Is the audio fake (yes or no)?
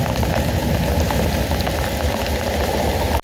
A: no